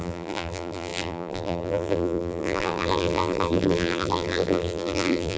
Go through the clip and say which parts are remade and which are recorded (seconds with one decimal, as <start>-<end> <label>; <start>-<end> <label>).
0.0-5.4 remade